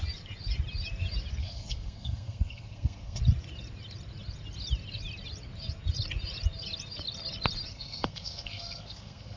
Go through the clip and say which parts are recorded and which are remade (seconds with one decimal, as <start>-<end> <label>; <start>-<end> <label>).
0.0-1.4 recorded; 1.4-3.2 remade; 3.2-7.7 recorded; 7.7-9.4 remade